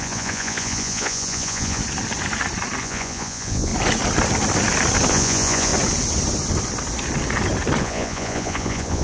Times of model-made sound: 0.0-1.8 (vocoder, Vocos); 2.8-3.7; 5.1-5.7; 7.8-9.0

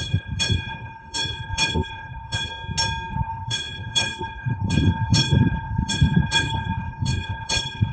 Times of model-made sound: 0.0-2.5 (codec, HILCodec); 3.1-7.9

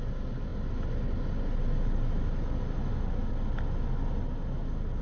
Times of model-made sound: none